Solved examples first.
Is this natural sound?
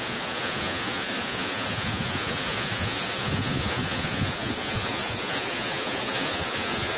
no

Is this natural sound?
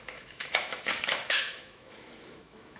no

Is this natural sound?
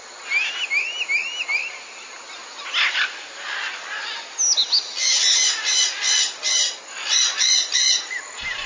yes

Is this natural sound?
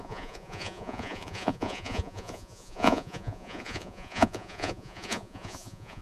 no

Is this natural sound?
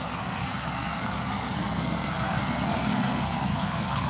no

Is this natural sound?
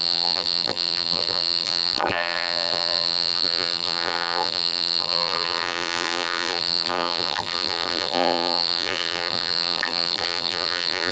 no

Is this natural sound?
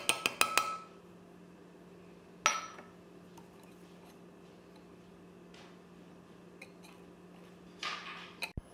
yes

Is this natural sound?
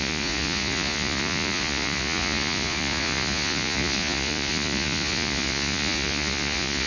no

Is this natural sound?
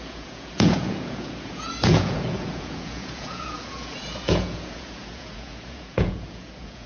no